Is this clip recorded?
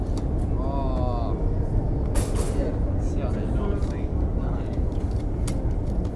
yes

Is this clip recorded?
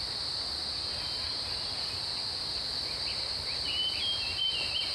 no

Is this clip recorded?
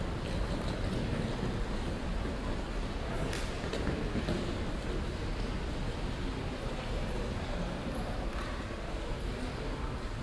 yes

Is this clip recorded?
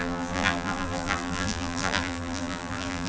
no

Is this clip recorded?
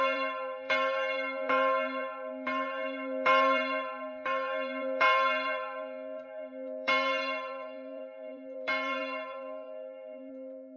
no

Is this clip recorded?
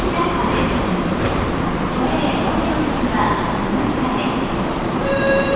no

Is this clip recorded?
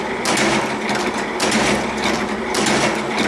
yes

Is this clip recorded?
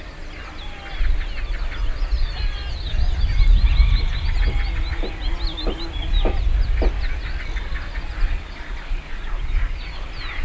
yes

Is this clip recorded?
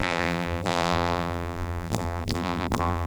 no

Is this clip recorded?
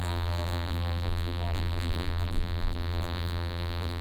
no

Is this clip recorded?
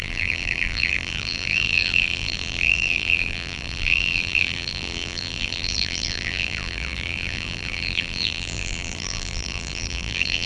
no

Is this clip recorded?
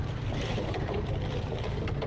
no